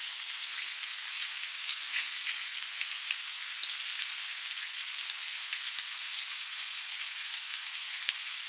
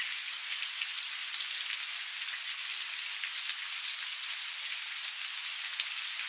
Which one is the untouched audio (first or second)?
second